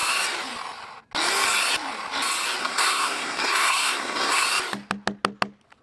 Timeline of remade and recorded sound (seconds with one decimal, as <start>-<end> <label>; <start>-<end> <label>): 0.0-2.6 recorded; 2.6-4.4 remade; 4.4-5.8 recorded